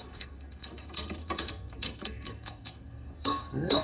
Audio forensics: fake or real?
fake